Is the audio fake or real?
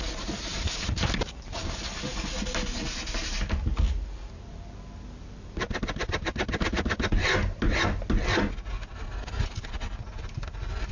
real